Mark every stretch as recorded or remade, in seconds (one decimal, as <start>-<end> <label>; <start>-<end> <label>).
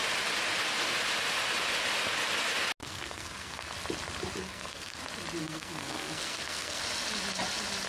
0.0-2.8 recorded; 2.8-3.7 remade; 3.7-4.4 recorded; 4.4-5.0 remade; 5.0-5.4 recorded; 5.4-6.8 remade; 6.8-7.9 recorded